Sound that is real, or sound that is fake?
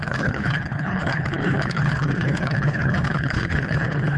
fake